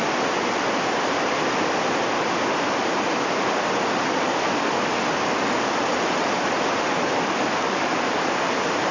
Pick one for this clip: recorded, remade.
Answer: recorded